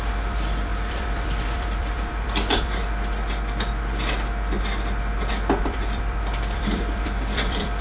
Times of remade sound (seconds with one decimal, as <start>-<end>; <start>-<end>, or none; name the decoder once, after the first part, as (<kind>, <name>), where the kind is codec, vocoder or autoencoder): 0.0-2.8 (vocoder, BigVGAN v2); 5.6-7.8